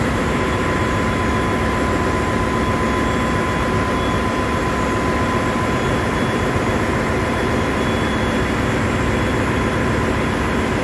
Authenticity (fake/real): real